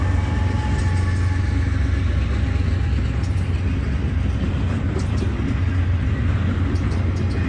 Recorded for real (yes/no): yes